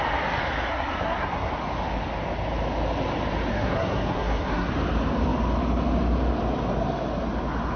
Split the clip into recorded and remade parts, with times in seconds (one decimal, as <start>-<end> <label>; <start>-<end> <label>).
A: 0.0-0.7 recorded; 0.7-1.5 remade; 1.5-3.5 recorded; 3.5-4.7 remade; 4.7-7.8 recorded